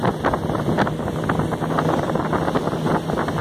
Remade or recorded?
recorded